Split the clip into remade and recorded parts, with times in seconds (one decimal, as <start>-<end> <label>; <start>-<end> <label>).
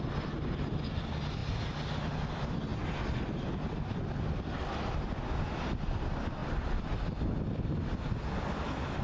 0.0-9.0 recorded